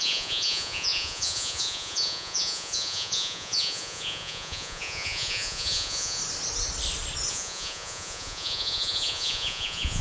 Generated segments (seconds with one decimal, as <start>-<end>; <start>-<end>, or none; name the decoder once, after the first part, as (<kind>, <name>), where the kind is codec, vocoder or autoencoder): 0.0-6.2 (vocoder, Vocos); 7.3-10.0